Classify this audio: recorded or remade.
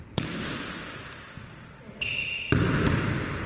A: recorded